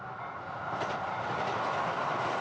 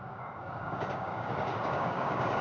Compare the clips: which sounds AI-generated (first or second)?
second